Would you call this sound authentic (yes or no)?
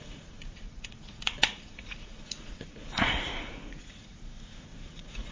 no